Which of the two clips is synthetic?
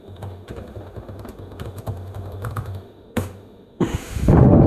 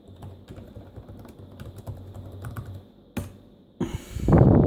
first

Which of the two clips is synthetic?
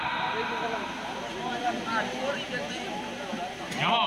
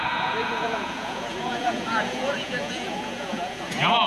second